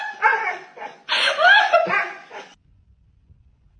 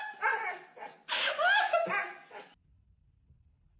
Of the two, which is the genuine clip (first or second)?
second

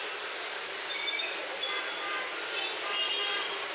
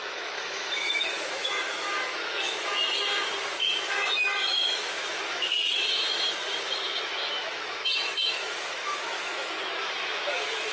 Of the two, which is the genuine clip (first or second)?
first